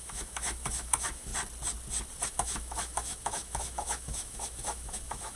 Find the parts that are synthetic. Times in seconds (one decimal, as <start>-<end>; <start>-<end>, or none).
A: 0.0-1.3; 2.3-5.4